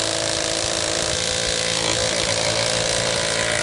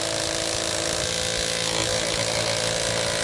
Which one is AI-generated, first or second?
first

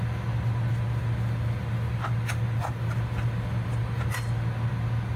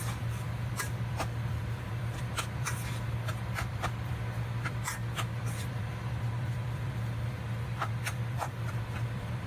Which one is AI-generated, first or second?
second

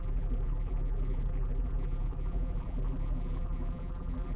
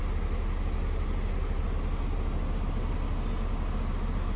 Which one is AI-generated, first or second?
first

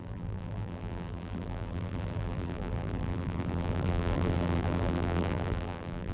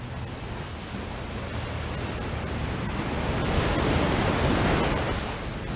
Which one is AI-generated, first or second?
first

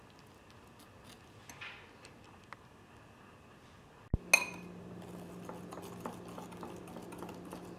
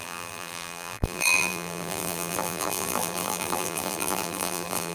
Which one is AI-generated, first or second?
second